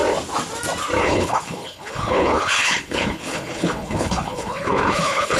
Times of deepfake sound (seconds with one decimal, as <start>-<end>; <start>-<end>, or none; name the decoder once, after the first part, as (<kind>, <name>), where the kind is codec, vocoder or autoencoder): 1.0-5.4 (codec, HILCodec)